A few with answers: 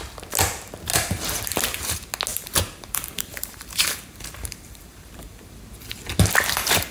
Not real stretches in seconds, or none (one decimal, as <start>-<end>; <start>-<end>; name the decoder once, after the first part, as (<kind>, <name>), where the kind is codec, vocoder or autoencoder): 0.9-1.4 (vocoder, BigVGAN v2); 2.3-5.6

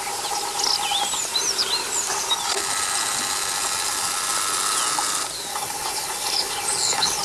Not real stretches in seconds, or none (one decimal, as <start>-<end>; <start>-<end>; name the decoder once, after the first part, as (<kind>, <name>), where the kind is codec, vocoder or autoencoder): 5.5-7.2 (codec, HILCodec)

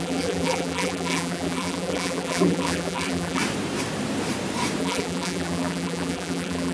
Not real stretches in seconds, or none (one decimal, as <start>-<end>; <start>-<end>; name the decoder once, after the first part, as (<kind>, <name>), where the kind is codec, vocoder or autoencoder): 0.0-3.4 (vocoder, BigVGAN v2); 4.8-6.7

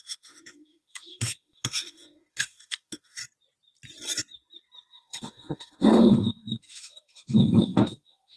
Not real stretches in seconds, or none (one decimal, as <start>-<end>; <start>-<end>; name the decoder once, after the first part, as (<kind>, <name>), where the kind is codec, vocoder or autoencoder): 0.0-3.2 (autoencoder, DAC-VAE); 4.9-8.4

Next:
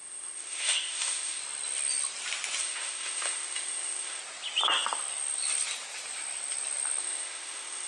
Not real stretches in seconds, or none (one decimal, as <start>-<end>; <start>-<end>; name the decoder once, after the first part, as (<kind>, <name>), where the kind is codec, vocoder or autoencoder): 0.0-1.4 (autoencoder, DAC-VAE); 2.6-4.2; 7.0-7.9

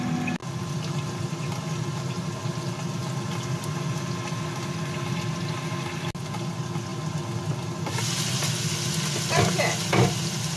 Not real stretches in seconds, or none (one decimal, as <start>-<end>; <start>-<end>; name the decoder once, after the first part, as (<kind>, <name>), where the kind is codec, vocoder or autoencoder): none

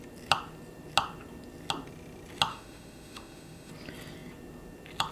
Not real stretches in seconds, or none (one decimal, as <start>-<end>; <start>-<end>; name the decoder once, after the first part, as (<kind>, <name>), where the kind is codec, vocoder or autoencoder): 2.5-3.7 (autoencoder, DAC-VAE)